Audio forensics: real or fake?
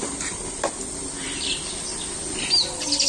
real